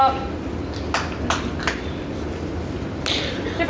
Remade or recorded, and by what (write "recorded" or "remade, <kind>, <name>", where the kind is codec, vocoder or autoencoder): recorded